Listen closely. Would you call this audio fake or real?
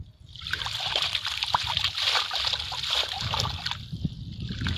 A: real